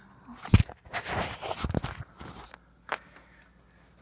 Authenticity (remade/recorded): recorded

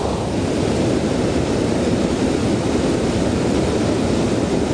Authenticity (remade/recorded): recorded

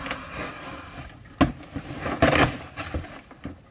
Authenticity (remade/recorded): recorded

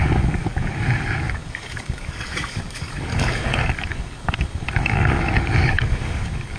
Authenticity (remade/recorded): remade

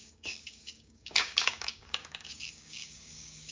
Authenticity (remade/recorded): remade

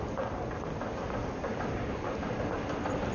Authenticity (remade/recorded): recorded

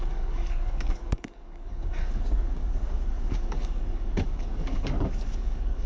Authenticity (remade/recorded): remade